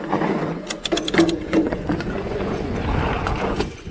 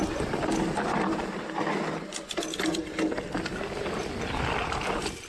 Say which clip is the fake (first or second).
first